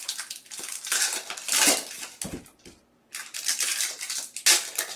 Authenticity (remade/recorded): recorded